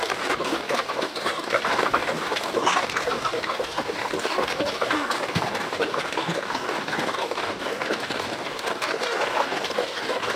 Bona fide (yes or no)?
no